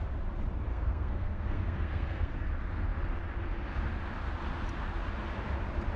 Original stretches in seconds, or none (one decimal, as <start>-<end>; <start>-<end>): 0.0-0.7; 2.5-6.0